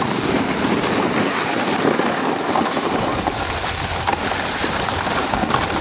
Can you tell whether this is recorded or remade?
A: recorded